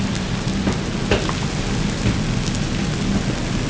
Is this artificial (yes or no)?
no